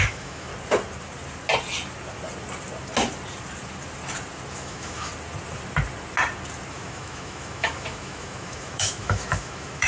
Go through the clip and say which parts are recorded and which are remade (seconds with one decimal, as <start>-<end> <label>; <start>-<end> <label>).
0.0-0.5 remade; 0.5-4.5 recorded; 4.5-5.1 remade; 5.1-6.7 recorded; 6.7-9.9 remade